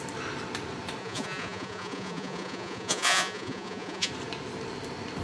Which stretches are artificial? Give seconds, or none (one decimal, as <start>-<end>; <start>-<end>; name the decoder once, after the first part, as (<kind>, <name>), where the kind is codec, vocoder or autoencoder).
1.0-4.1 (vocoder, Vocos)